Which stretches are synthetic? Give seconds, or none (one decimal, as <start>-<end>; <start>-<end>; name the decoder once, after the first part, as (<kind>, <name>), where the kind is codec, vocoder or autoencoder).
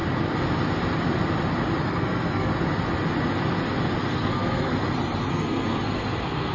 1.8-2.5 (codec, SNAC); 4.1-4.7; 5.3-6.5